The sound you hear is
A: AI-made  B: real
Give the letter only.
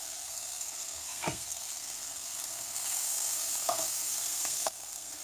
A